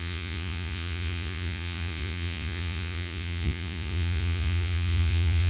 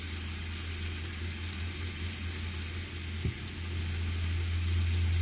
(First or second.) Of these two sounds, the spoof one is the first